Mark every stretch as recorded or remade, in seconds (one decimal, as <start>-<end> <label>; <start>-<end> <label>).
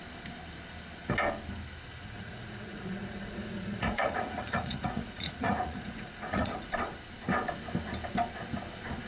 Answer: 0.0-1.9 recorded; 1.9-6.7 remade; 6.7-9.1 recorded